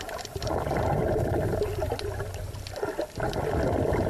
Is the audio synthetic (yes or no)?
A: no